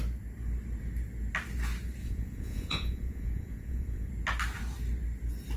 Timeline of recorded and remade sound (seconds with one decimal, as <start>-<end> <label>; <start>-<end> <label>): 0.0-2.0 recorded; 2.0-4.1 remade; 4.1-5.6 recorded